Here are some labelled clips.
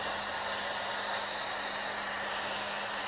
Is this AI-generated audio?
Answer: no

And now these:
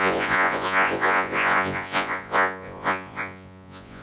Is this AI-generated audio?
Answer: yes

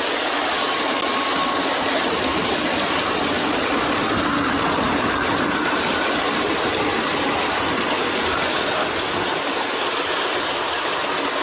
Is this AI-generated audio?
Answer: no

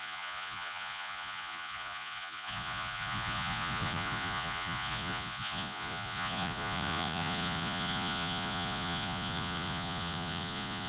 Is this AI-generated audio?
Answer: yes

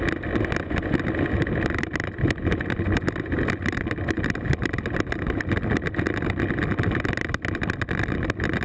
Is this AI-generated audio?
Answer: no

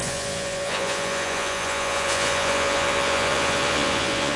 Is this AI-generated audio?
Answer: yes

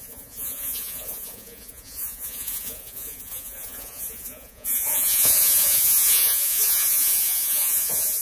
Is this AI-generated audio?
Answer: yes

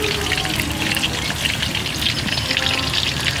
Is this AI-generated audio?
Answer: no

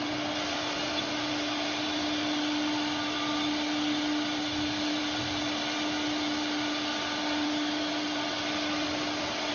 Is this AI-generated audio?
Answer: no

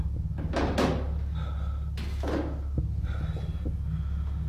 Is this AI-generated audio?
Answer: no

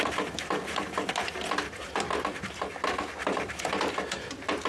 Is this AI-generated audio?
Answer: no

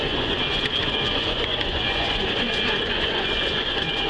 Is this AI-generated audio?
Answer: yes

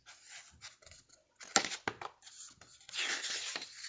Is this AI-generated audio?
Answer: no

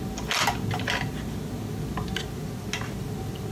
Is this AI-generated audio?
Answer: no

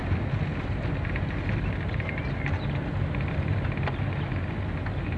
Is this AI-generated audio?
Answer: no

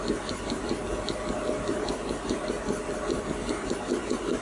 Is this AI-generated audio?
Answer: no